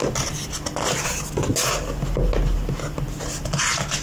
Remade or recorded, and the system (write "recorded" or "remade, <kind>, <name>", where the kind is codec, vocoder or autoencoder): recorded